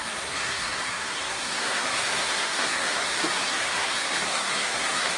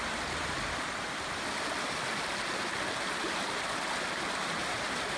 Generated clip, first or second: first